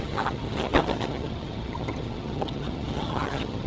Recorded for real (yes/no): no